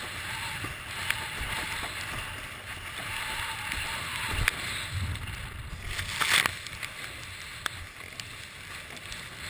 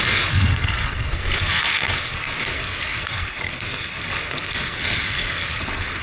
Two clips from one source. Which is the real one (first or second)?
first